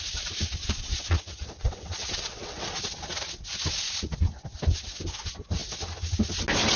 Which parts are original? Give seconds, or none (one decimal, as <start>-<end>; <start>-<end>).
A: 0.0-0.6; 2.8-6.8